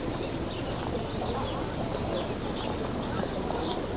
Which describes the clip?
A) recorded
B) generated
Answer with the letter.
A